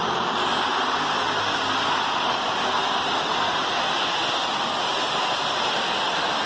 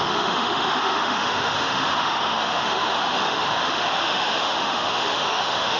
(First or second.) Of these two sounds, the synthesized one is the second